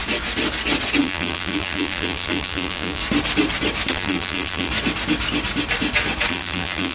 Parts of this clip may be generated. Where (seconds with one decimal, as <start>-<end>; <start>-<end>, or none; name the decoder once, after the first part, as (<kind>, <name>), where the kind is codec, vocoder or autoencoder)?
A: 1.0-3.0 (vocoder, BigVGAN v2); 3.9-4.7; 6.3-6.9

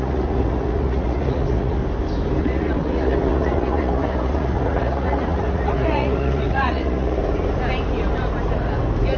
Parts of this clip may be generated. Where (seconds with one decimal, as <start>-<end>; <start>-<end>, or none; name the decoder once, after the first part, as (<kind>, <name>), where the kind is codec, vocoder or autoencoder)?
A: 0.0-1.8 (vocoder, Vocos); 2.4-7.2

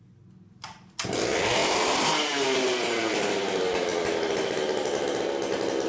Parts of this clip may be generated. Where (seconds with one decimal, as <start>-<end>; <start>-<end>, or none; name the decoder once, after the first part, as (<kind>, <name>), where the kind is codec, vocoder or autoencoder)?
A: 1.6-3.1 (vocoder, BigVGAN v2)

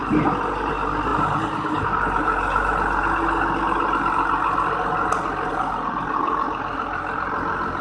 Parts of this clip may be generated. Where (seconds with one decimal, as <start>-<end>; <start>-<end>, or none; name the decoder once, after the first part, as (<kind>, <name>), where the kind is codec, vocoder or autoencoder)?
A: none

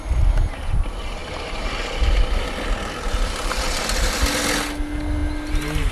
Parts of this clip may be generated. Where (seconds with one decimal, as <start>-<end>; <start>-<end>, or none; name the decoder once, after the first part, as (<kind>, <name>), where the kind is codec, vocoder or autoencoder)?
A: none

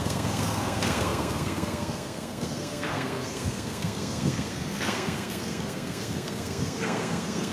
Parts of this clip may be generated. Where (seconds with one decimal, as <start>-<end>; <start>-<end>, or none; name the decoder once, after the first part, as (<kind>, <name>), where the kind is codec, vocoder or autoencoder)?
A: 0.0-7.5 (codec, SNAC)